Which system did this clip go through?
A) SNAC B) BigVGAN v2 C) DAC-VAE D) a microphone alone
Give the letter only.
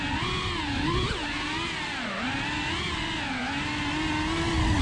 D